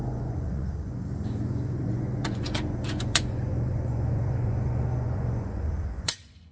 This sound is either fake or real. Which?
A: fake